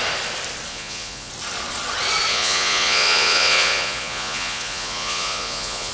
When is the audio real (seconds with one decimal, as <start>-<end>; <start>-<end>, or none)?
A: 0.0-0.7; 1.3-2.3